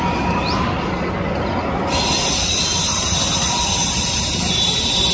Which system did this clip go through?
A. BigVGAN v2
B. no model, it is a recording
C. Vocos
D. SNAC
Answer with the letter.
B